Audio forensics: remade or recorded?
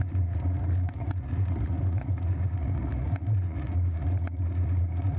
remade